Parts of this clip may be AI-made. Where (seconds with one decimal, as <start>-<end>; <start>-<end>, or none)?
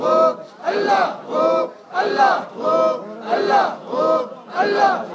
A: 0.0-2.7; 4.0-5.1